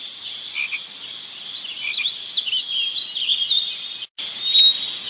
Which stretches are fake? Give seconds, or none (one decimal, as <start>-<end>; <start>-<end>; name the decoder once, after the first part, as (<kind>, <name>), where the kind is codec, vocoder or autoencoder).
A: none